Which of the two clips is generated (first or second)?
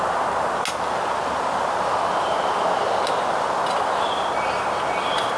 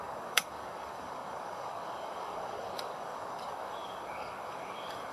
second